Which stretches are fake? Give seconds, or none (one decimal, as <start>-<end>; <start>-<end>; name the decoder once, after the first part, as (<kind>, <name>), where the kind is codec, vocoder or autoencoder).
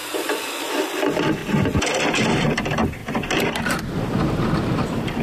0.0-1.4 (vocoder, BigVGAN v2); 2.3-5.2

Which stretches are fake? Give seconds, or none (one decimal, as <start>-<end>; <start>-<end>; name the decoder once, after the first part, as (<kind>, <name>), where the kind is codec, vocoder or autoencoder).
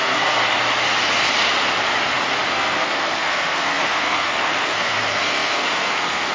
0.0-0.4 (codec, SNAC); 2.5-6.3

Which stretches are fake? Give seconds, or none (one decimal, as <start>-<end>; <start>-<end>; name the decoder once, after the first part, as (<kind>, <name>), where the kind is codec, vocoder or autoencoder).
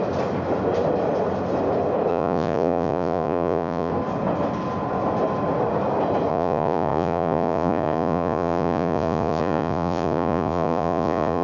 2.1-3.9 (vocoder, Vocos); 6.3-11.4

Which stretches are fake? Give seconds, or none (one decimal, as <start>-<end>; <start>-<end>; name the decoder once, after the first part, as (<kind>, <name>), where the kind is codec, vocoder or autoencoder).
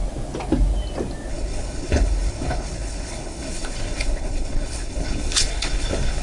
1.3-6.2 (codec, HILCodec)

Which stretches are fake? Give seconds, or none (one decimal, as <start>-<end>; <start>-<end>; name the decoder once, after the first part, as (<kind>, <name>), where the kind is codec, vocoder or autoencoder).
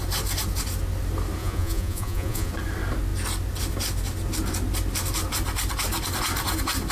1.4-2.5 (vocoder, Vocos)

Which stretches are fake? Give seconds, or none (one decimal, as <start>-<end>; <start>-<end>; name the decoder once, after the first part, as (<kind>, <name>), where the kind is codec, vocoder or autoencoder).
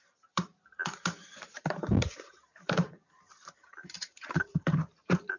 0.0-5.4 (vocoder, BigVGAN v2)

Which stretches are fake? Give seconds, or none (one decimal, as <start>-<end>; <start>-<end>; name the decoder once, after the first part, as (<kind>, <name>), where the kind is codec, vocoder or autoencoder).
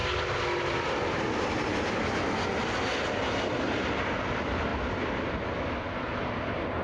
none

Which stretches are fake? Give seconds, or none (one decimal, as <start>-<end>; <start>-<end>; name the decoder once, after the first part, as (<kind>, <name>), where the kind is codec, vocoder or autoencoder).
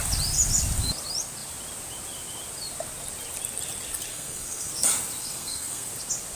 4.1-4.7 (codec, SNAC); 5.2-5.9